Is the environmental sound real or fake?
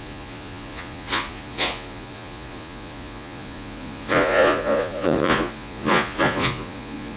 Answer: fake